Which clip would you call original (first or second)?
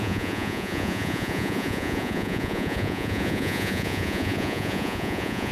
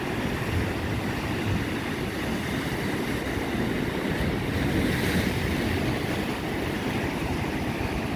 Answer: second